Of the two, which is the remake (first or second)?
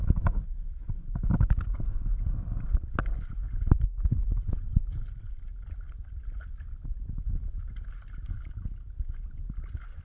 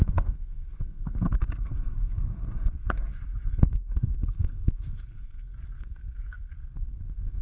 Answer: second